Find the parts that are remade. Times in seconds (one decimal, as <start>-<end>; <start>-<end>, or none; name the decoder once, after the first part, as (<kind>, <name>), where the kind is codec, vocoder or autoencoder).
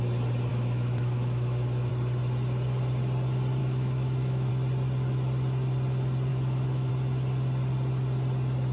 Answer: 0.5-1.9 (autoencoder, DAC-VAE); 3.6-4.5; 6.3-6.9